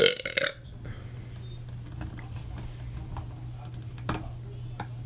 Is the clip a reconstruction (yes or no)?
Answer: no